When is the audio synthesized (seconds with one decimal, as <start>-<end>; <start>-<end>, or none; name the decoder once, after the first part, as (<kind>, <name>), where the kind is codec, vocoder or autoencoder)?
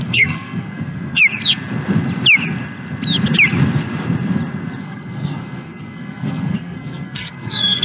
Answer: 0.0-1.2 (codec, SNAC); 4.8-7.8